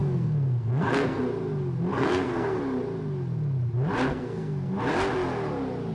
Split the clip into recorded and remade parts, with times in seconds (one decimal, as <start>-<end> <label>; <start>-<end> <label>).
0.0-1.2 remade; 1.2-1.9 recorded; 1.9-2.6 remade; 2.6-4.1 recorded; 4.1-4.7 remade; 4.7-5.9 recorded